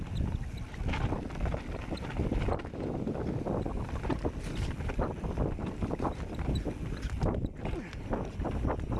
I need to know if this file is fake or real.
real